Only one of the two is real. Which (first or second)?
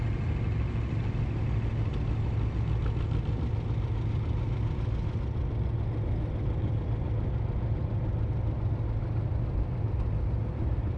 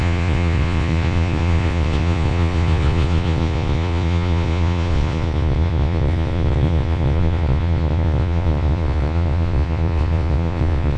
first